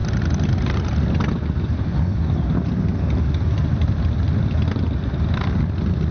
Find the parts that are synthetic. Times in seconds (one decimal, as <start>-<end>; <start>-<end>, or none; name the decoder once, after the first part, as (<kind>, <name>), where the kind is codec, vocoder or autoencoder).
none